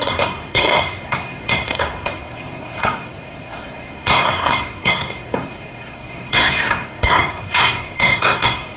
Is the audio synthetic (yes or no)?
yes